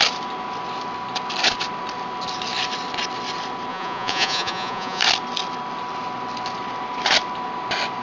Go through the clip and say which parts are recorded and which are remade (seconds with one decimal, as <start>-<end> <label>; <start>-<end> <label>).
0.0-3.7 recorded; 3.7-5.0 remade; 5.0-8.0 recorded